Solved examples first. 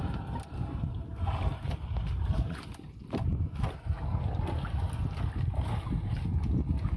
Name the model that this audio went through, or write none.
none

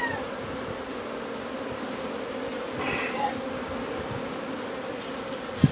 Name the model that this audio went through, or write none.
none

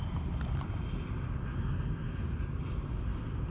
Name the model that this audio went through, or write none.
none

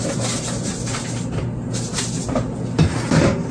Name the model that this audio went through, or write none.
none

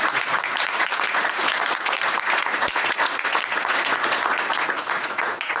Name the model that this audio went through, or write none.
vocoder, Vocos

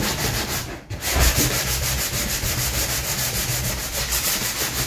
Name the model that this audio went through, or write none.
vocoder, BigVGAN v2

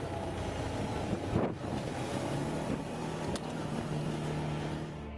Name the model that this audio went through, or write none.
none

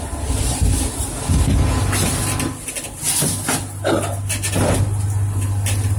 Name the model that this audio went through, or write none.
none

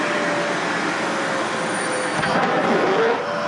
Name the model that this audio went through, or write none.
vocoder, BigVGAN v2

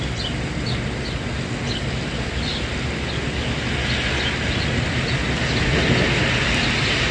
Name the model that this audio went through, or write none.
none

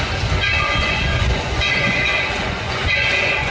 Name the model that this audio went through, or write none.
vocoder, Vocos